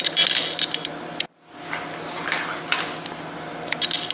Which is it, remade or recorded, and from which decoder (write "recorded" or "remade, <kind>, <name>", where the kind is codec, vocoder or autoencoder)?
recorded